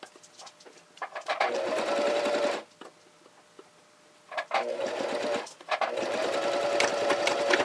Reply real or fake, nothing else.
real